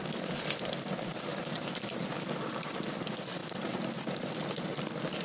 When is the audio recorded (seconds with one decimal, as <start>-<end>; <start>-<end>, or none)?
0.0-5.2